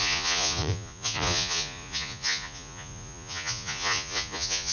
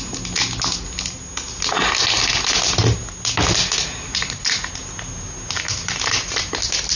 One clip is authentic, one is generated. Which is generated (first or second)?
first